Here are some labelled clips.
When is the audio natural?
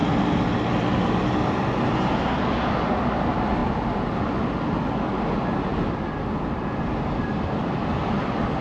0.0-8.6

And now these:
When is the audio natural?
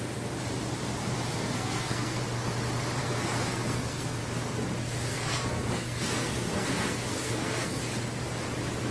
0.0-1.4; 2.2-3.0; 4.2-5.1; 7.8-8.9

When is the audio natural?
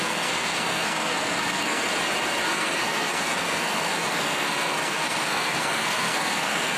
1.9-2.5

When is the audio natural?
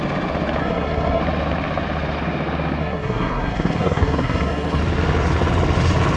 0.0-0.6; 1.2-2.8; 4.8-6.2